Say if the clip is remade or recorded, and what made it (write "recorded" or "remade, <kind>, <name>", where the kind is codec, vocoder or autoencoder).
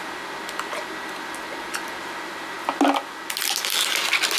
recorded